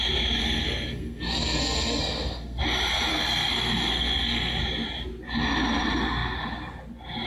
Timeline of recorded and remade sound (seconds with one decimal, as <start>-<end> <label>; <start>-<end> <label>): 0.0-0.4 recorded; 0.4-2.6 remade; 2.6-3.1 recorded; 3.1-4.6 remade; 4.6-7.3 recorded